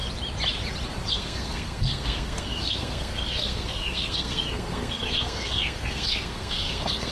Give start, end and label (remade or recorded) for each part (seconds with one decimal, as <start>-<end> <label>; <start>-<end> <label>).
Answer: 0.0-1.1 recorded; 1.1-7.1 remade